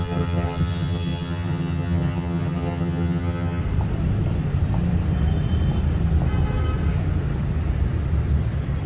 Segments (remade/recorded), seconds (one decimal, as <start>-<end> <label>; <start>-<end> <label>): 0.0-3.6 remade; 3.6-8.9 recorded